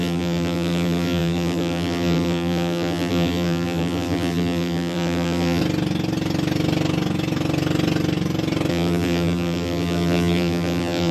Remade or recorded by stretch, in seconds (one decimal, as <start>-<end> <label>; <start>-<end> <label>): 0.0-5.6 remade; 5.6-8.7 recorded; 8.7-11.1 remade